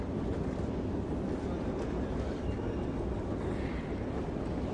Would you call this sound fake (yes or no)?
no